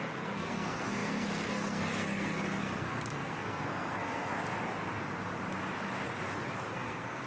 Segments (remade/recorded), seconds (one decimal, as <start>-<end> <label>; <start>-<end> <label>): 0.0-4.3 remade; 4.3-6.7 recorded; 6.7-7.3 remade